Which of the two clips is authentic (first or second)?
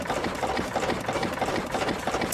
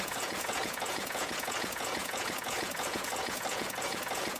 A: first